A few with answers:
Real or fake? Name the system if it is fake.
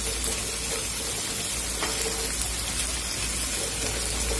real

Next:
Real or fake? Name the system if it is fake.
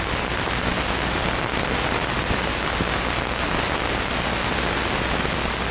real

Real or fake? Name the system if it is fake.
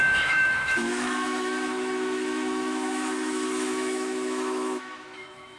fake, autoencoder, DAC-VAE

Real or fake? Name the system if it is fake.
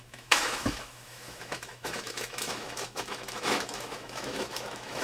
fake, autoencoder, DAC-VAE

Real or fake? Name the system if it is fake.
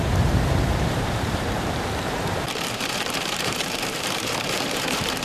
fake, vocoder, BigVGAN v2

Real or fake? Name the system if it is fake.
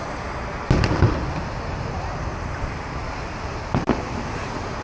real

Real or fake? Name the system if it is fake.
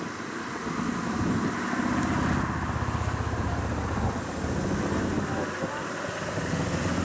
real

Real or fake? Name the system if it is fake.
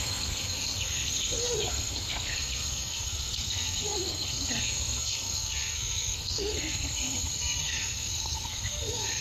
fake, codec, SNAC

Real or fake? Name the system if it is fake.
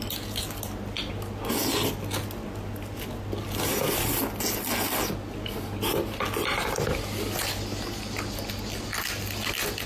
real